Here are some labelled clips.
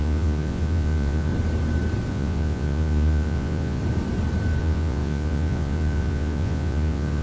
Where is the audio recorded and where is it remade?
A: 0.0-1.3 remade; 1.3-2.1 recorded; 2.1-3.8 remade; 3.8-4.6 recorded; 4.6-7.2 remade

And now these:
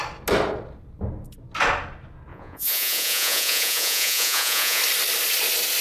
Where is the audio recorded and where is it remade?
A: 0.0-2.3 recorded; 2.3-4.8 remade; 4.8-5.8 recorded

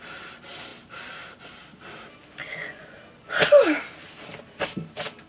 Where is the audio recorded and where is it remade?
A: 0.0-2.4 recorded; 2.4-3.0 remade; 3.0-5.3 recorded

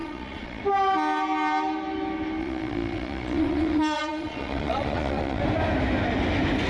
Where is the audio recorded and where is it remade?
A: 0.0-0.6 remade; 0.6-2.4 recorded; 2.4-5.4 remade; 5.4-6.7 recorded

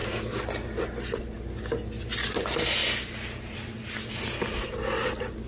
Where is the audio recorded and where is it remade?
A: 0.0-5.5 recorded